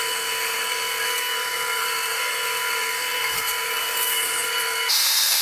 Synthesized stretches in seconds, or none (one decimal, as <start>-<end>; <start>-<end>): 0.0-5.4

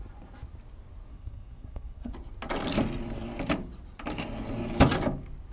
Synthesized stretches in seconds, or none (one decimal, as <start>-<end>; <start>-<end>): 1.1-2.1